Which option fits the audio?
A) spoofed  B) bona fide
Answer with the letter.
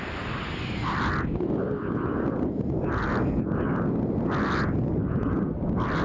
B